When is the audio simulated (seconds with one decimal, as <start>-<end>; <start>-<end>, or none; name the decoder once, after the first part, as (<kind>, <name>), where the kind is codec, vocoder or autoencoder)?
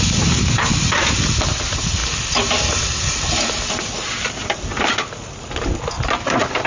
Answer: none